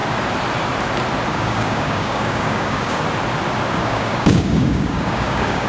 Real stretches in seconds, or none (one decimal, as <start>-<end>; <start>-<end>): 0.0-1.3; 3.0-3.8